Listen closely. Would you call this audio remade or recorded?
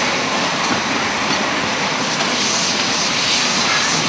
recorded